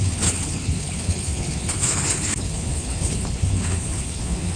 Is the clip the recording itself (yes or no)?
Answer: no